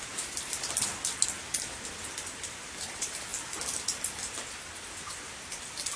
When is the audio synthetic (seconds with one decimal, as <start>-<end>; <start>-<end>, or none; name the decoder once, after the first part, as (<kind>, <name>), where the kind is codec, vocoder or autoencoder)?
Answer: none